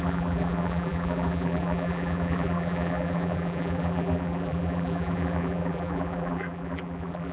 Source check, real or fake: fake